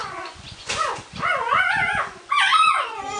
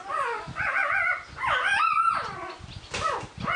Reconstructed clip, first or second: first